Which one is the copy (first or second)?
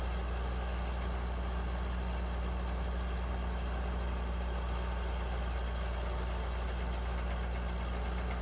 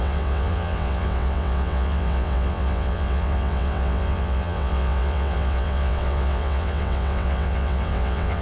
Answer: second